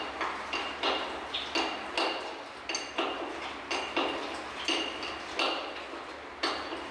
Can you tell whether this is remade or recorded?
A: recorded